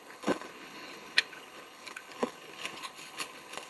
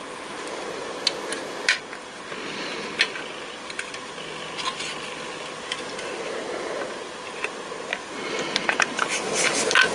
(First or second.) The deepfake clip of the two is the first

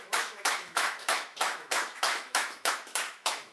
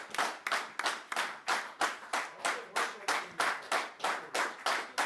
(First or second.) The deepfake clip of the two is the first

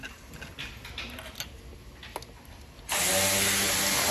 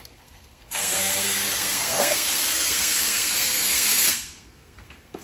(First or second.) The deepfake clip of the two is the second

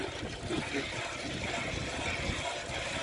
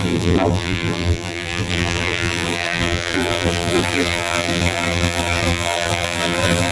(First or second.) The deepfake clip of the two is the second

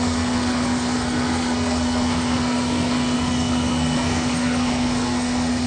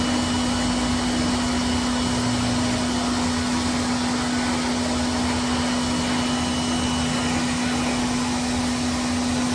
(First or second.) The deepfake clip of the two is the first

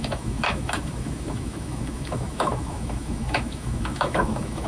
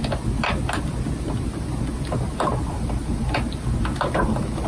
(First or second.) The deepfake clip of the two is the first